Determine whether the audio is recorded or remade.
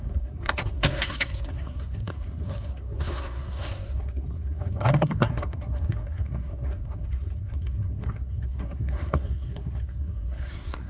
remade